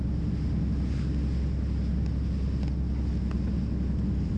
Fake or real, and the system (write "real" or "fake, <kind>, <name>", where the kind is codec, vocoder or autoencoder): real